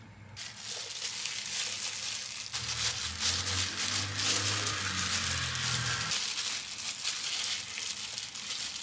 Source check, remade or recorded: recorded